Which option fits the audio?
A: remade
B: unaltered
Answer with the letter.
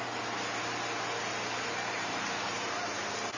B